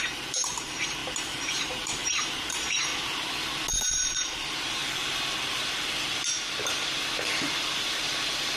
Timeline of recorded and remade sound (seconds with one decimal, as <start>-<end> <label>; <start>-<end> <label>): 0.0-2.9 remade; 2.9-3.7 recorded; 3.7-8.6 remade